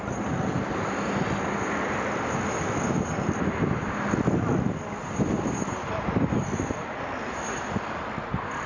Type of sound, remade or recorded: recorded